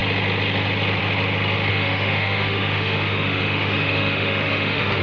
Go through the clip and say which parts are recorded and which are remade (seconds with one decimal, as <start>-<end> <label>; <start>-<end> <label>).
0.0-1.7 recorded; 1.7-5.0 remade

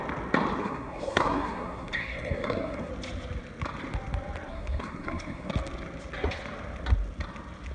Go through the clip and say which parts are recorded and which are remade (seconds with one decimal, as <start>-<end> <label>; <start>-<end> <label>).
0.0-0.6 recorded; 0.6-2.9 remade; 2.9-4.5 recorded; 4.5-5.5 remade; 5.5-7.7 recorded

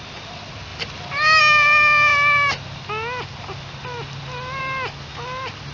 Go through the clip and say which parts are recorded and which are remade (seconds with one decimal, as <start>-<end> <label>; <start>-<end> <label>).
0.0-5.7 recorded

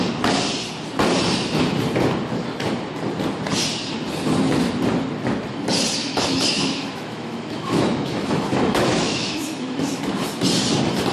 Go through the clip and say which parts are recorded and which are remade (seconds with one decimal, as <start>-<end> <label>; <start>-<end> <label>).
0.0-6.0 recorded; 6.0-10.0 remade; 10.0-11.1 recorded